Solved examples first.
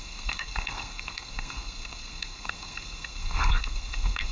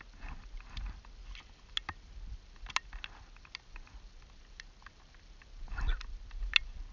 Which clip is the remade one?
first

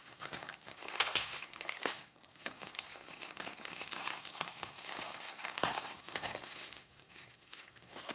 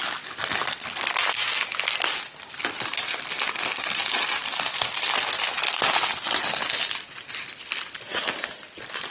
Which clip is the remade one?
first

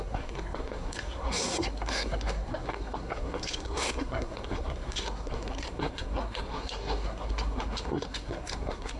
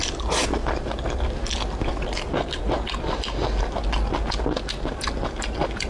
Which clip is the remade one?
first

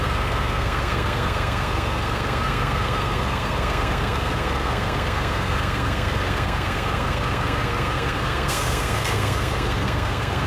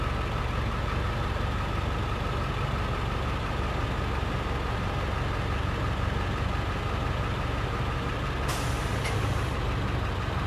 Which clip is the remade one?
first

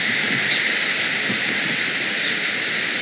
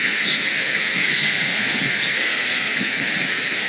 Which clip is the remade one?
second